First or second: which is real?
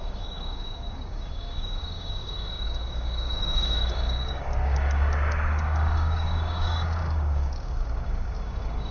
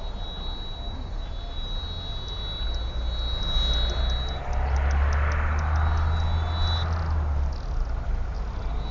second